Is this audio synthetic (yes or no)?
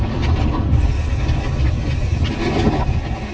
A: no